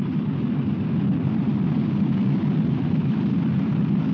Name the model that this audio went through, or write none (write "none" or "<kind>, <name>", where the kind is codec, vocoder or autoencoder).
none